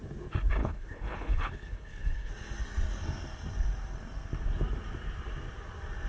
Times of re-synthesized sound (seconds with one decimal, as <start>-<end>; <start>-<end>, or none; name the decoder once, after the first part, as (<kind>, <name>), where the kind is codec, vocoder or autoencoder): 0.6-2.3 (codec, HILCodec)